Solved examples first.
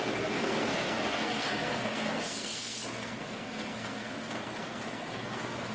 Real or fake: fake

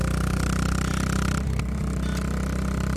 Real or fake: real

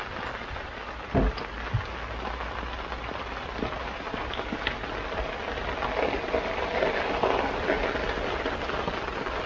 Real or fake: real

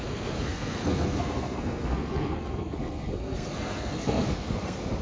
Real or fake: fake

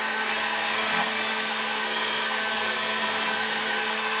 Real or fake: fake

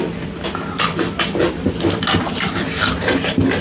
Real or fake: real